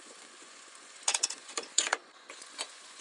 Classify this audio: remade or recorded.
remade